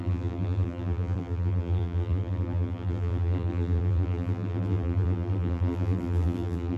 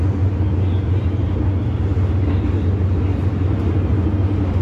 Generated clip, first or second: first